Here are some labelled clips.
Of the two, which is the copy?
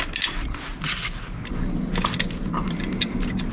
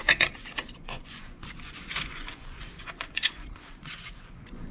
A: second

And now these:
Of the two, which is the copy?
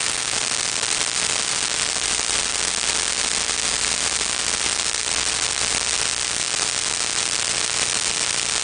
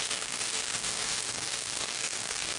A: second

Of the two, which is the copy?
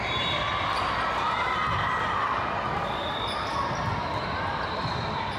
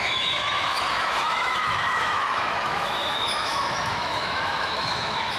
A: second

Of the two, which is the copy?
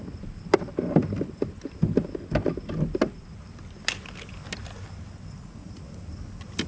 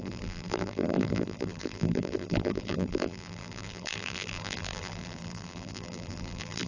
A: second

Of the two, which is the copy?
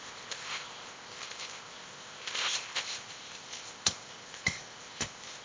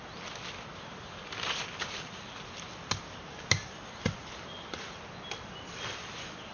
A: first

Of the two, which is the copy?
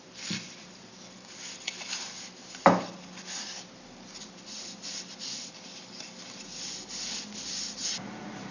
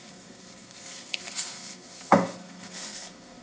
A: second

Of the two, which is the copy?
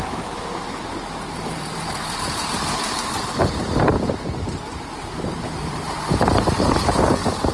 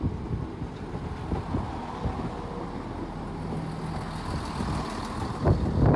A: first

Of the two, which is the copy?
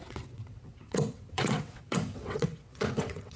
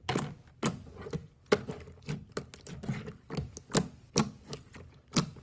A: first